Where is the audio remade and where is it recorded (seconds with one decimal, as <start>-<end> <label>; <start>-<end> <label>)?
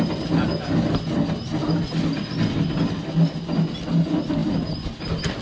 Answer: 0.0-5.4 recorded